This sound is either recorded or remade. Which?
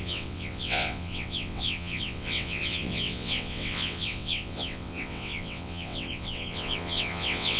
remade